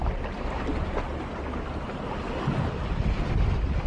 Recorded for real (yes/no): yes